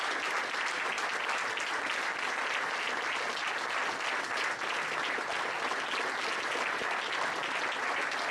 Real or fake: real